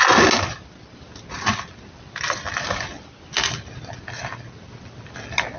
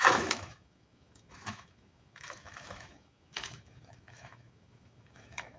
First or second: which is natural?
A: first